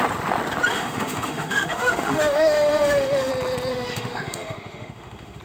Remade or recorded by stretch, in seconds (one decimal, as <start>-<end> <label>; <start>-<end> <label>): 0.0-0.7 recorded; 0.7-3.3 remade; 3.3-3.7 recorded; 3.7-5.4 remade